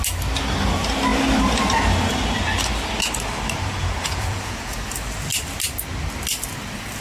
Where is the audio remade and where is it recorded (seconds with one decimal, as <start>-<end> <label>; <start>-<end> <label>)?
0.0-3.8 recorded; 3.8-4.8 remade; 4.8-7.0 recorded